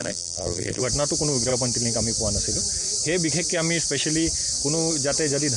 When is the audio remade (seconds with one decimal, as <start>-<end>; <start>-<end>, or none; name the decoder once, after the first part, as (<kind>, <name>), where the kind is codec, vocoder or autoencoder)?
0.0-0.8 (vocoder, BigVGAN v2)